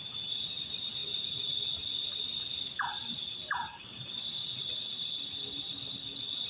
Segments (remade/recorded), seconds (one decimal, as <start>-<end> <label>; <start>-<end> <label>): 0.0-6.5 recorded